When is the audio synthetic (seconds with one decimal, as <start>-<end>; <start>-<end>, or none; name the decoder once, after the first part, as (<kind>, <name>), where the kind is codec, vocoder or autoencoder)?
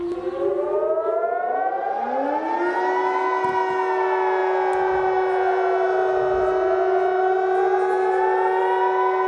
none